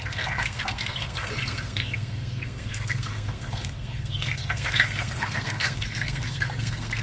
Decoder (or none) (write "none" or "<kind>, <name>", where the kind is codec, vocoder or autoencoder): codec, SNAC